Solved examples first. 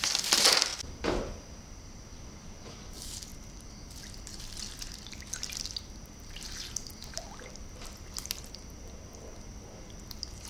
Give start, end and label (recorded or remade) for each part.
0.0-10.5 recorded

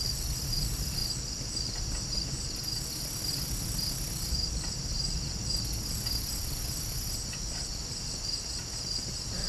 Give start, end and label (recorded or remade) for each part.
0.0-9.5 recorded

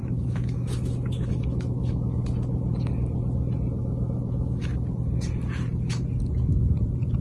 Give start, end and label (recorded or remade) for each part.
0.0-2.2 remade; 2.2-3.8 recorded; 3.8-4.7 remade; 4.7-7.2 recorded

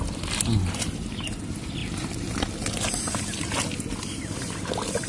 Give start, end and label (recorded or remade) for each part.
0.0-5.1 recorded